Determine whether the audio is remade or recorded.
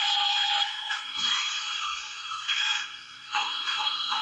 remade